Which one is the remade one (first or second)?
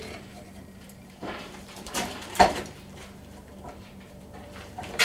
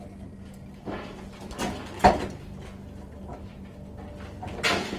first